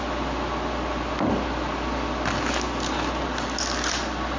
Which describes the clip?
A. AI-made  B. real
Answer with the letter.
B